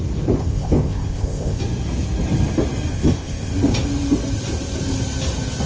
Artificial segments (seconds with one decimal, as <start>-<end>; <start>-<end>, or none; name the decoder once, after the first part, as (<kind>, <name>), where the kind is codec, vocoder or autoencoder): 0.4-1.6 (codec, ZipCodec); 2.9-3.5